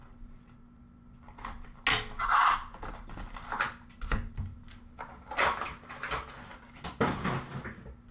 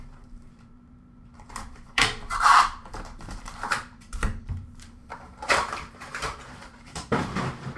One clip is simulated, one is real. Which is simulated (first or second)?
second